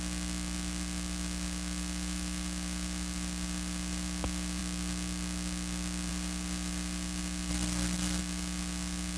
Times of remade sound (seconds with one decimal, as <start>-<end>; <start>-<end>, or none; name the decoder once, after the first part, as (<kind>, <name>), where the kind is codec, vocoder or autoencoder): 7.5-8.2 (codec, SNAC)

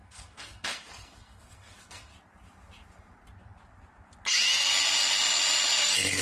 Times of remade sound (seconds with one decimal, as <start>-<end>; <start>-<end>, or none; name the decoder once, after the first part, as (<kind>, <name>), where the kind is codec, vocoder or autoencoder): 0.0-2.1 (codec, SNAC); 5.8-6.2

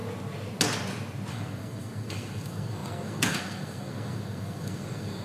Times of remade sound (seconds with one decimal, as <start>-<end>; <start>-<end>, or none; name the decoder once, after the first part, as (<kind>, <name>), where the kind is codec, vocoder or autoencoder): 1.3-5.2 (codec, SNAC)